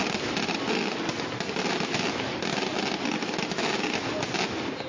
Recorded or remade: recorded